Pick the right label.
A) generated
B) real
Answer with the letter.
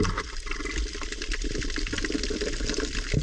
B